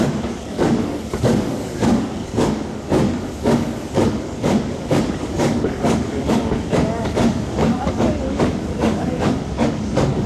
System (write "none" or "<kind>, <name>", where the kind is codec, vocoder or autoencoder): codec, DAC